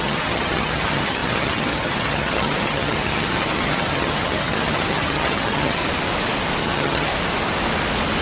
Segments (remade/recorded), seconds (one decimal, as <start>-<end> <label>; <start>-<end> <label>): 0.0-5.8 remade; 5.8-6.6 recorded; 6.6-7.1 remade; 7.1-8.2 recorded